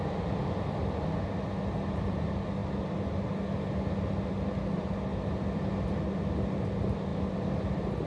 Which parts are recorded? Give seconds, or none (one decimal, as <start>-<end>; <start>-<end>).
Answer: 0.0-8.1